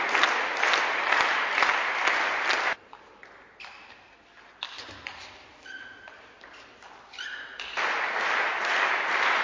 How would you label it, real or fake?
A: real